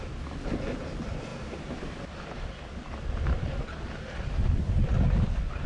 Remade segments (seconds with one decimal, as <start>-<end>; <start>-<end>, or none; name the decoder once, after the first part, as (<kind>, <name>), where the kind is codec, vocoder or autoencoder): none